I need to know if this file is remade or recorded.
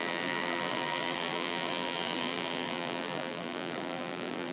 remade